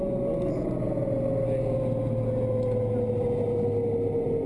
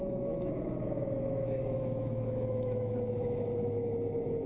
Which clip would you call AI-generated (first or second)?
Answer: second